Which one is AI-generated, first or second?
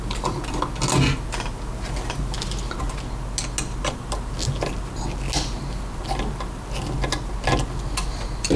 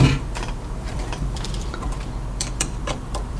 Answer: second